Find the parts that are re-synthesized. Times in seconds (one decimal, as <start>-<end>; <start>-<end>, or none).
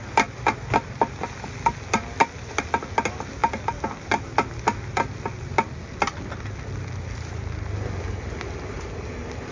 none